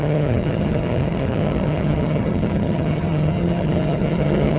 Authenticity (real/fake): fake